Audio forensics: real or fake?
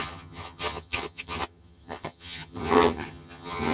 fake